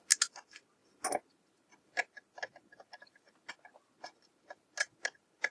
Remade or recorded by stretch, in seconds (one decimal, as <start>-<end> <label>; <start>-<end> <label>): 0.0-5.5 recorded